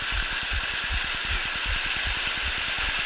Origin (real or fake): real